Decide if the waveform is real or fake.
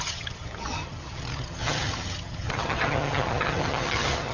fake